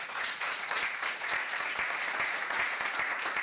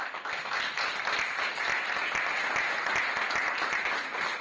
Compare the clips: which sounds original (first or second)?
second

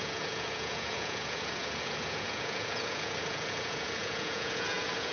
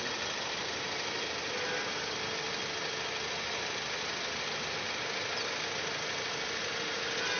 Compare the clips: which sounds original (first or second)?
second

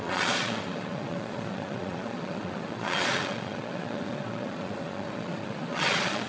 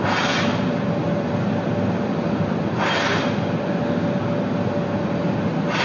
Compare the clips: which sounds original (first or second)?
second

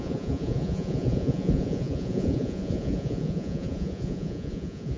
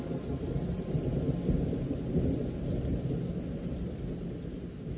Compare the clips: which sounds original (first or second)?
second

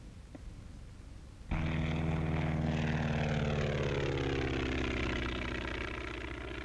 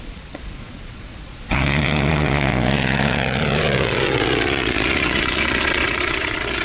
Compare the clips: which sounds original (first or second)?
first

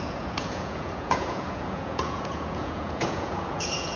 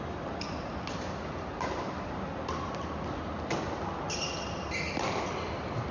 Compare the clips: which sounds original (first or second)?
second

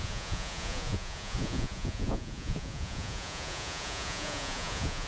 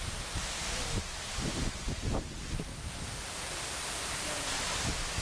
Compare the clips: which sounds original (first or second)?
second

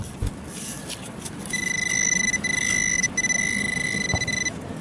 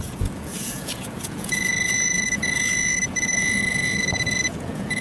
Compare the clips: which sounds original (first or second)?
first